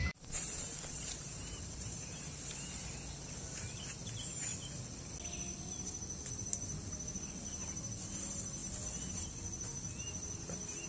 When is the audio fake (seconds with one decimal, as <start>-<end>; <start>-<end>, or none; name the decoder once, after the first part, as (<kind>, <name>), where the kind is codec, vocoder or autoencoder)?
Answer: 0.0-2.7 (vocoder, BigVGAN v2)